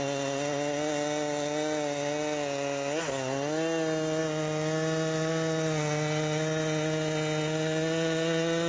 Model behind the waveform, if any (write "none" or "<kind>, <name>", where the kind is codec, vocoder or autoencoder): none